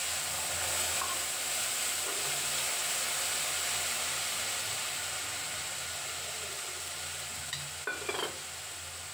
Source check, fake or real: real